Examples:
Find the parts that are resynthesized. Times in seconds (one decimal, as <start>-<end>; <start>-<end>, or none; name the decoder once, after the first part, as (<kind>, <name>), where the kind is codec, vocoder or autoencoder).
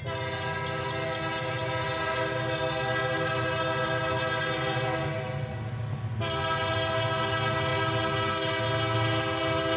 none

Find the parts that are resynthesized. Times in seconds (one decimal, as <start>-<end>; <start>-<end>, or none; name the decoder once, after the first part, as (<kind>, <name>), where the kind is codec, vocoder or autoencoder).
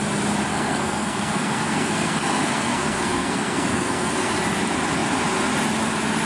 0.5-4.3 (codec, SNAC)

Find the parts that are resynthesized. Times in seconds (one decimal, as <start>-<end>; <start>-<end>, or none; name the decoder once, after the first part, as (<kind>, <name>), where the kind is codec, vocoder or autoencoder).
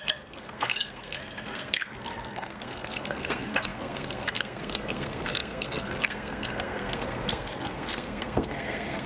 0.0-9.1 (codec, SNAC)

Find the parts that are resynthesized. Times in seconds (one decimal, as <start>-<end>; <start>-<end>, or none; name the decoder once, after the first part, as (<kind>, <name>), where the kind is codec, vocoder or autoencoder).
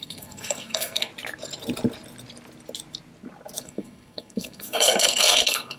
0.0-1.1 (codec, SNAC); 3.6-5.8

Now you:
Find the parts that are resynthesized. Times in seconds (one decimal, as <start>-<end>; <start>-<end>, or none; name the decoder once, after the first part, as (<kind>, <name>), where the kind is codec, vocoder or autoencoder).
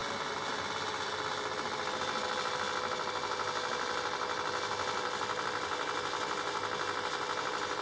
none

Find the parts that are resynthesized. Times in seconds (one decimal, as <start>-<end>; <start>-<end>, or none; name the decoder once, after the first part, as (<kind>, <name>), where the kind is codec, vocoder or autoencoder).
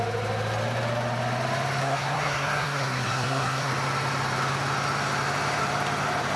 1.8-3.7 (codec, SNAC)